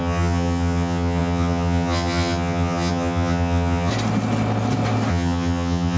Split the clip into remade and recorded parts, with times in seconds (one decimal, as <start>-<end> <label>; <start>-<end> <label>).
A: 0.0-3.9 remade; 3.9-5.1 recorded; 5.1-6.0 remade